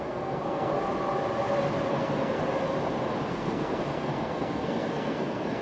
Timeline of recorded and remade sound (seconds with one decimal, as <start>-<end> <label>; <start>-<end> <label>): 0.0-0.7 remade; 0.7-1.9 recorded; 1.9-2.4 remade; 2.4-3.3 recorded; 3.3-5.6 remade